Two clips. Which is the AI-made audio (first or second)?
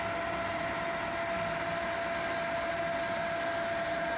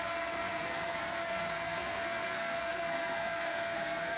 second